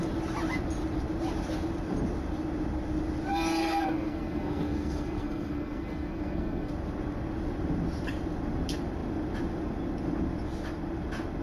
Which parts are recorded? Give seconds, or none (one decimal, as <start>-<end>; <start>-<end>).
0.0-3.6; 6.7-11.4